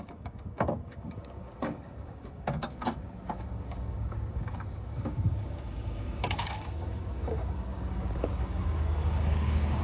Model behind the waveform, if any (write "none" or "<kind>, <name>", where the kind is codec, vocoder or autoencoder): codec, DAC